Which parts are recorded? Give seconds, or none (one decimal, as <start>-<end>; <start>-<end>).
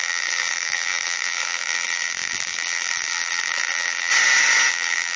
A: 4.1-4.7